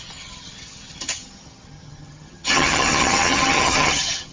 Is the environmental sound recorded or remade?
remade